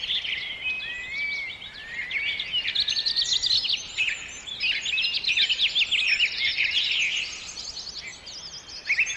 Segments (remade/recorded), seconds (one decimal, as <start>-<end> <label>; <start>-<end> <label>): 0.0-9.2 recorded